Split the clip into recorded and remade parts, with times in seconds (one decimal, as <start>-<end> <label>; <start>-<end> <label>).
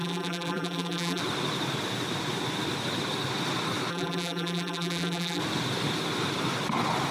0.0-1.2 remade; 1.2-3.9 recorded; 3.9-5.4 remade; 5.4-7.1 recorded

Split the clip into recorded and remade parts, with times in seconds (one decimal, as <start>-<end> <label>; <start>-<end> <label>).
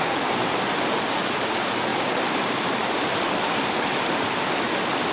0.0-1.9 recorded; 1.9-4.0 remade; 4.0-5.1 recorded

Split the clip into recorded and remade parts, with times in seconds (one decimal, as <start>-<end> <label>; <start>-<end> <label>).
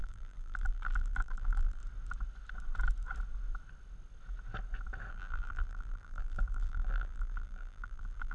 0.0-1.8 remade; 1.8-5.1 recorded; 5.1-8.3 remade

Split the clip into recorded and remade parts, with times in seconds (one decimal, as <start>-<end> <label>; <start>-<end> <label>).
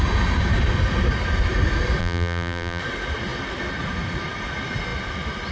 0.0-2.0 recorded; 2.0-2.8 remade; 2.8-5.5 recorded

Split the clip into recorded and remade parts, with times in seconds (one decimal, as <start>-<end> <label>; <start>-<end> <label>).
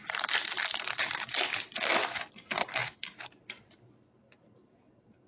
0.0-0.6 recorded; 0.6-1.9 remade; 1.9-5.3 recorded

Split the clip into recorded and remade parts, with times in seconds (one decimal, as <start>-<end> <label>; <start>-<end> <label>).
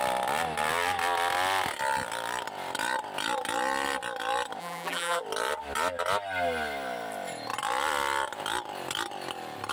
0.0-4.6 recorded; 4.6-5.2 remade; 5.2-9.7 recorded